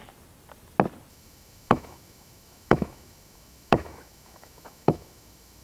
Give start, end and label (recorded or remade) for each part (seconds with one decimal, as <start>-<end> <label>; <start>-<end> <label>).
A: 0.0-1.1 recorded; 1.1-5.6 remade

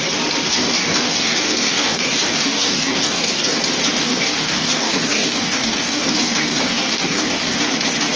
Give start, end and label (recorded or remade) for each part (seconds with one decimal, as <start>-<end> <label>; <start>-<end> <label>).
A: 0.0-0.5 recorded; 0.5-3.6 remade; 3.6-4.0 recorded; 4.0-7.6 remade; 7.6-8.2 recorded

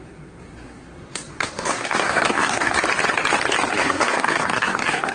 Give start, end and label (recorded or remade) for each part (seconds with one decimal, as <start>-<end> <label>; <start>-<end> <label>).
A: 0.0-2.8 remade; 2.8-3.7 recorded; 3.7-5.1 remade

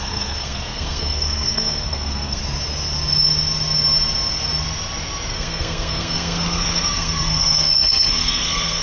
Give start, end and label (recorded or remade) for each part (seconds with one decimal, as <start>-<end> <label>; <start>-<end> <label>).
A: 0.0-2.4 remade; 2.4-5.3 recorded; 5.3-8.8 remade

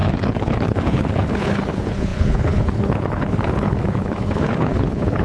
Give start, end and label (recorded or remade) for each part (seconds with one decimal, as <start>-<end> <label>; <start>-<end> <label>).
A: 0.0-5.2 remade